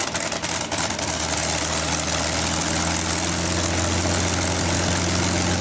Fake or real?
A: real